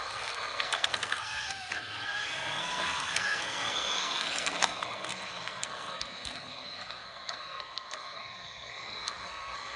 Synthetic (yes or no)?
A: yes